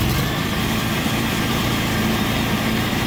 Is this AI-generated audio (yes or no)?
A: yes